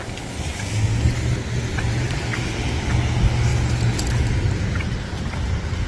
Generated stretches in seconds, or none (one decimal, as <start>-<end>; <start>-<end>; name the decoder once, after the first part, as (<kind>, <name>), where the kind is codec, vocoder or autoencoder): 1.7-2.3 (vocoder, BigVGAN v2)